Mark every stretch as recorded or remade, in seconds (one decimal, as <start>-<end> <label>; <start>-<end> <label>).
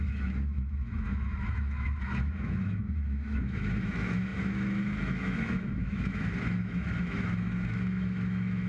0.0-8.7 remade